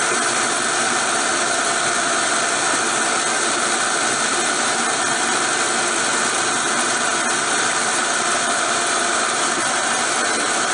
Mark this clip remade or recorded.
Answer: recorded